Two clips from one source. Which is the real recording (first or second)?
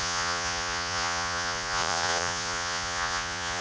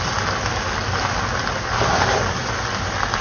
second